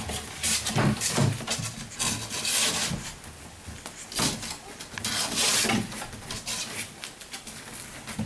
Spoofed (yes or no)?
no